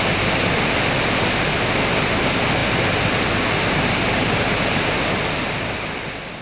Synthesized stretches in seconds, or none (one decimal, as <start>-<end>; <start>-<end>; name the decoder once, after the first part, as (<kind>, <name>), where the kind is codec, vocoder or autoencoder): none